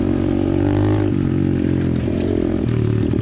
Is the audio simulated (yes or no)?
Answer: yes